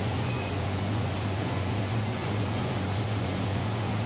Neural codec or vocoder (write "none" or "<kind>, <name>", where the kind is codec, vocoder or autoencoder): vocoder, Vocos